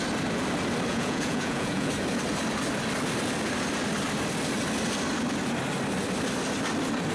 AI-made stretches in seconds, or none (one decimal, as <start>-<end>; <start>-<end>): 0.9-1.9